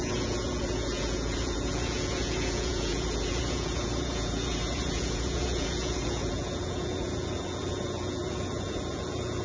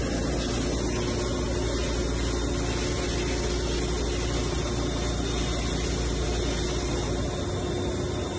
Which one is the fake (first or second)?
first